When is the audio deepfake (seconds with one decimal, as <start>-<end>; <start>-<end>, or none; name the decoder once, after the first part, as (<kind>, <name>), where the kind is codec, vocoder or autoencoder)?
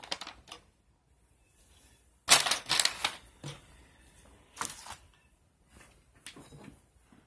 none